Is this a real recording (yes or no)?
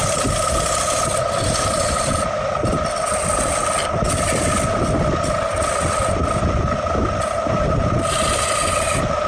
yes